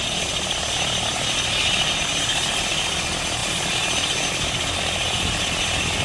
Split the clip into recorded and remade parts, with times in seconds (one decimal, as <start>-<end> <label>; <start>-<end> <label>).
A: 0.0-6.0 recorded